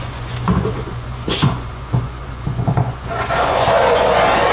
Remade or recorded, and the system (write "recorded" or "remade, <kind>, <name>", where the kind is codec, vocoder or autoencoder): remade, vocoder, Vocos